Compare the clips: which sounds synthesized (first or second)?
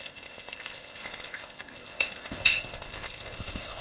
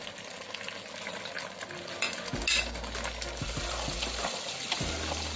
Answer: first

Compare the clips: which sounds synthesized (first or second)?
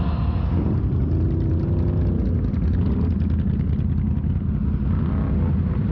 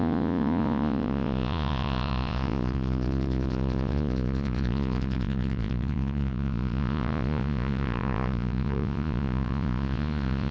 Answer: second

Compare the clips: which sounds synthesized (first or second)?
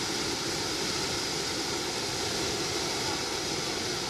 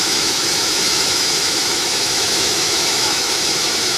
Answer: second